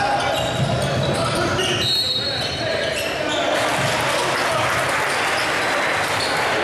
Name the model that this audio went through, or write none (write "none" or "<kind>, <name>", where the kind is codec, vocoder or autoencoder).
none